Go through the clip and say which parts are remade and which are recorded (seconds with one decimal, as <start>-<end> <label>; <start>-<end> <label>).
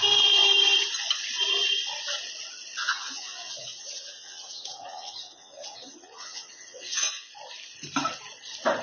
0.0-2.8 recorded; 2.8-7.3 remade; 7.3-8.8 recorded